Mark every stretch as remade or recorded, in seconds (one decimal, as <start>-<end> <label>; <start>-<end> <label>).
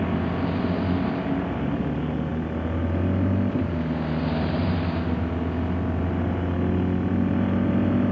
0.0-8.1 recorded